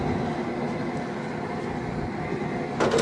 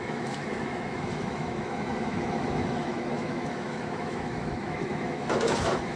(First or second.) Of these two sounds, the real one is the first